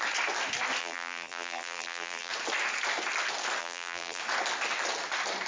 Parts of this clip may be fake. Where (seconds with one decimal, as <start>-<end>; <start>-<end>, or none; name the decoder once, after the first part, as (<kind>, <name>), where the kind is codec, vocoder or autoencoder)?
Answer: 0.8-2.3 (vocoder, BigVGAN v2); 3.6-4.2